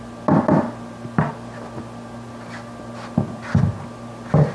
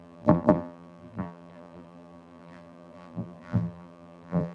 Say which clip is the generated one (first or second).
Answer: second